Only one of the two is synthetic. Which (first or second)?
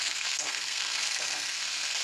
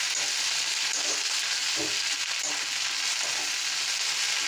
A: first